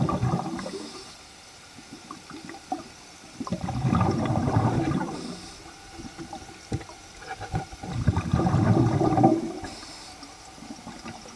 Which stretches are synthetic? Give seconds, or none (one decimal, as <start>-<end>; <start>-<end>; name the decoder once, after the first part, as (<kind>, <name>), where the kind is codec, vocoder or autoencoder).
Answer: none